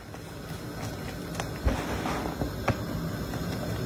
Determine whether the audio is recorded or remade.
recorded